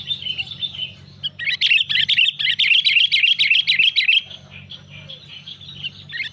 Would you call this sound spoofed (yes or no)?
no